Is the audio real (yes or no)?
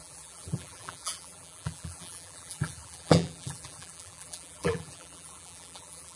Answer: no